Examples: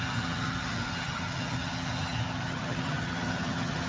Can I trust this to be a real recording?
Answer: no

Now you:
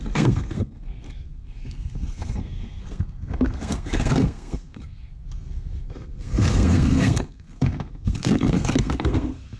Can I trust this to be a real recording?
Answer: no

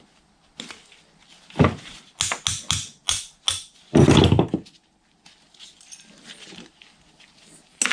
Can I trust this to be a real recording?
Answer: yes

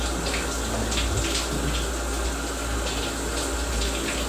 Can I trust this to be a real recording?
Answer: yes